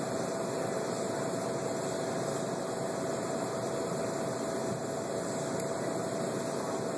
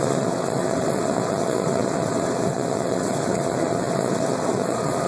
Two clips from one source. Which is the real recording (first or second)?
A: first